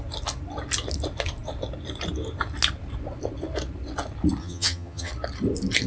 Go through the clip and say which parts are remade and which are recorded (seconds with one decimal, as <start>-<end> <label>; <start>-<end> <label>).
0.0-4.4 recorded; 4.4-5.1 remade; 5.1-5.9 recorded